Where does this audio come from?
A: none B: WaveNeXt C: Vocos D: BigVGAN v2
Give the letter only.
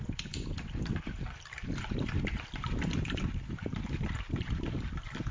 A